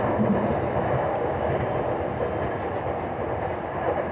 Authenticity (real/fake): real